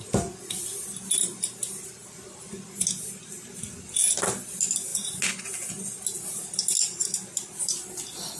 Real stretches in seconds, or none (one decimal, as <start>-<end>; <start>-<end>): 0.0-8.4